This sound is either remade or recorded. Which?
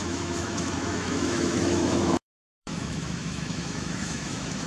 remade